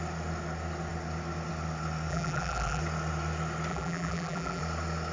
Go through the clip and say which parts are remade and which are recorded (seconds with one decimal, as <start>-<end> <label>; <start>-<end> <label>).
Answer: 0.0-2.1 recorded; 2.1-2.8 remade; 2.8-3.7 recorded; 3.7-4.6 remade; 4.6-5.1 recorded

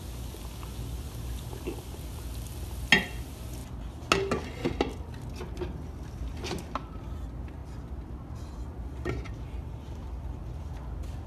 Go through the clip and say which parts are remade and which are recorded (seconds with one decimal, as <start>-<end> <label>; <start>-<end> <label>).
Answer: 0.0-7.6 recorded; 7.6-8.5 remade; 8.5-10.0 recorded; 10.0-10.7 remade; 10.7-11.3 recorded

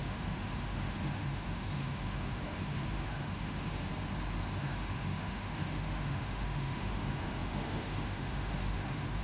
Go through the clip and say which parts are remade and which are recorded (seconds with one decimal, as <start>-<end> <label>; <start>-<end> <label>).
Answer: 0.0-3.9 remade; 3.9-4.6 recorded; 4.6-9.2 remade

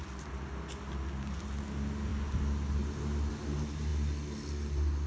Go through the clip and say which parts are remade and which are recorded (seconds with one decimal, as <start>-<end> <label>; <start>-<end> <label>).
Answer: 0.0-5.1 recorded

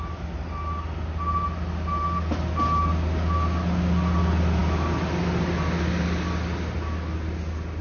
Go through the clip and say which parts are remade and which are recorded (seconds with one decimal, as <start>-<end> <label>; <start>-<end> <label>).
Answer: 0.0-7.8 recorded

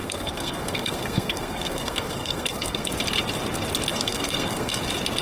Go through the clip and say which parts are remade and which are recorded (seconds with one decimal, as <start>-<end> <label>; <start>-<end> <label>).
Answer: 0.0-2.9 remade; 2.9-3.9 recorded; 3.9-4.8 remade; 4.8-5.2 recorded